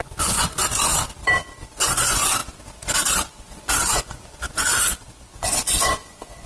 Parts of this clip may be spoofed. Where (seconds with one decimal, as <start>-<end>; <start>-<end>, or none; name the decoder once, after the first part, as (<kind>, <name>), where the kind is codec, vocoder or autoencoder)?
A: 0.0-0.9 (vocoder, Vocos); 1.7-2.4; 3.1-6.5